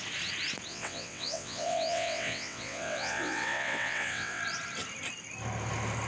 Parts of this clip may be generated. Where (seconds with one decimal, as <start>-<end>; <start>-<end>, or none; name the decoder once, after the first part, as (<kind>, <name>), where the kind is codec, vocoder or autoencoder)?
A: 0.7-4.4 (vocoder, WaveNeXt)